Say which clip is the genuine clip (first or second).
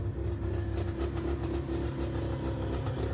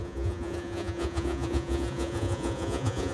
first